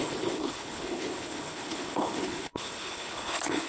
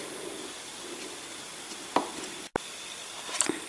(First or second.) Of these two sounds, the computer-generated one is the first